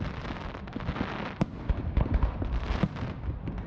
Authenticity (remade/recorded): recorded